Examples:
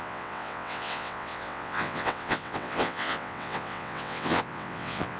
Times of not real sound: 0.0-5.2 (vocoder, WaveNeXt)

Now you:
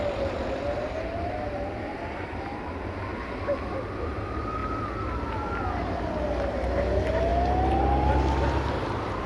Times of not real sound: none

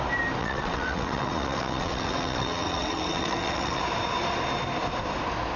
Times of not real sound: 0.4-3.8 (vocoder, WaveNeXt)

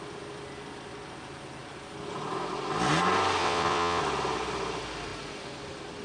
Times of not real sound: 3.4-4.0 (vocoder, WaveNeXt)

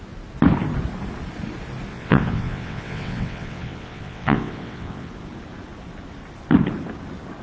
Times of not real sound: 1.9-5.1 (vocoder, WaveNeXt)

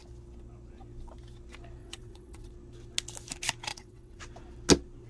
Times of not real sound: 1.8-2.5 (vocoder, WaveNeXt); 3.7-4.2